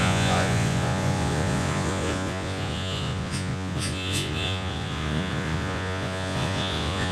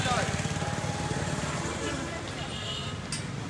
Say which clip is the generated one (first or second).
first